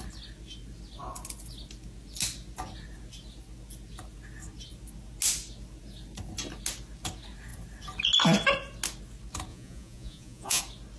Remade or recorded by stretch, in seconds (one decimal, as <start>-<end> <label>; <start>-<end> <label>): 0.0-9.5 recorded; 9.5-10.6 remade; 10.6-11.0 recorded